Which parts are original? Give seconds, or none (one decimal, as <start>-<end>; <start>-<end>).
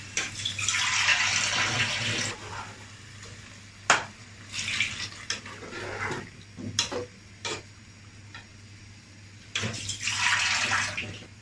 0.0-8.5; 10.1-11.4